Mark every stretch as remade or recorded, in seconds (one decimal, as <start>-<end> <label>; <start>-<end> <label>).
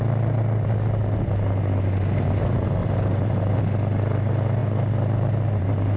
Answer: 0.0-2.8 recorded; 2.8-3.6 remade; 3.6-6.0 recorded